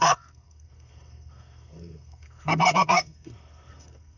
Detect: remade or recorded remade